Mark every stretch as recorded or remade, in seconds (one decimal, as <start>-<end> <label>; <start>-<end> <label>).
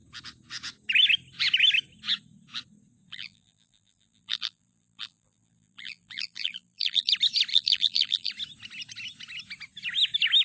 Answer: 0.0-3.1 recorded; 3.1-7.1 remade; 7.1-7.5 recorded; 7.5-8.3 remade; 8.3-10.4 recorded